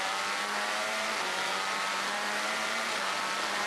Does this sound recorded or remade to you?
remade